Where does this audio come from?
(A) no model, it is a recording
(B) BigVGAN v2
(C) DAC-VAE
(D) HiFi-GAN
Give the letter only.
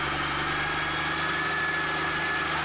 A